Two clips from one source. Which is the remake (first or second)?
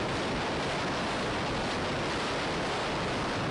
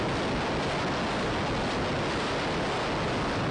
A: first